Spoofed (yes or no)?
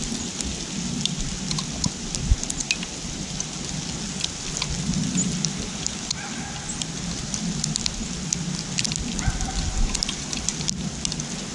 no